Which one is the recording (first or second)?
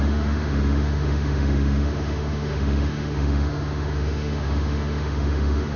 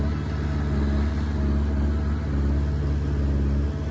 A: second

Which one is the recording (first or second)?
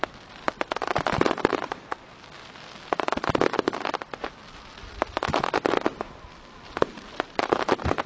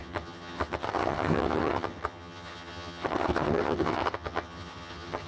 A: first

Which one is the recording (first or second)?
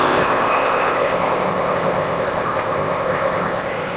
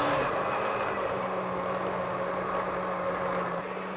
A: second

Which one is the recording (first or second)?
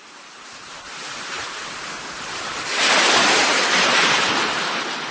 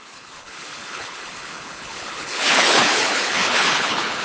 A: first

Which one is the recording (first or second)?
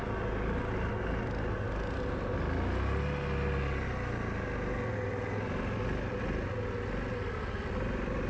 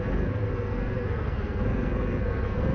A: first